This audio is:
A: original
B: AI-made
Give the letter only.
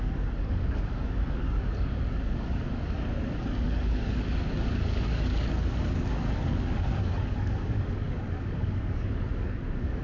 B